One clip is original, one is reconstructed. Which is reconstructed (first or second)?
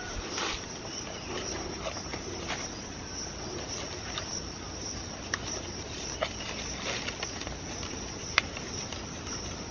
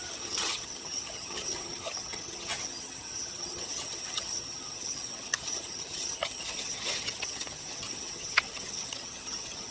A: second